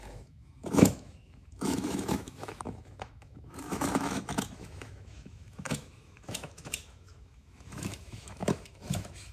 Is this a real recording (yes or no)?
no